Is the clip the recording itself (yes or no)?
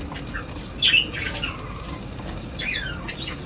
yes